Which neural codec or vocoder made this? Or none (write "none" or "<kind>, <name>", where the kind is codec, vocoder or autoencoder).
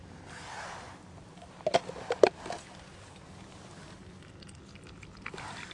none